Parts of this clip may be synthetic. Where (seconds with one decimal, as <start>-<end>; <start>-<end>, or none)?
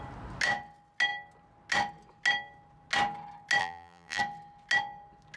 3.6-4.2